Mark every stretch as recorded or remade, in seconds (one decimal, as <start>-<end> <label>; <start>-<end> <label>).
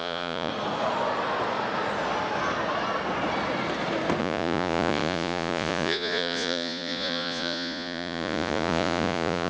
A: 0.0-0.5 remade; 0.5-4.2 recorded; 4.2-9.5 remade